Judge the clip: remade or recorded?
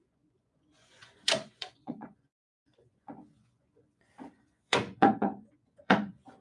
remade